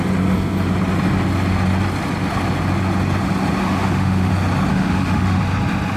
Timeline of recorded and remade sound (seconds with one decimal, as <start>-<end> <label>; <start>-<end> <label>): 0.0-3.6 recorded; 3.6-4.3 remade; 4.3-4.7 recorded; 4.7-5.4 remade; 5.4-6.0 recorded